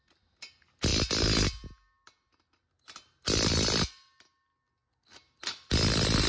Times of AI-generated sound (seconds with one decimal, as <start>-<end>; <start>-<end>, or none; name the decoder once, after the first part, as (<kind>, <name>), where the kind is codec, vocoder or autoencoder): none